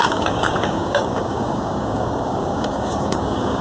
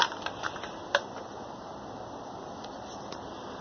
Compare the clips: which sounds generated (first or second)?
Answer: first